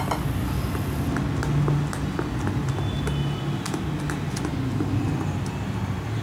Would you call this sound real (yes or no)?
yes